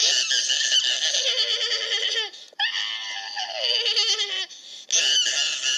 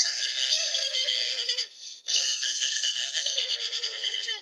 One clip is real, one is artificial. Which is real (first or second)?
first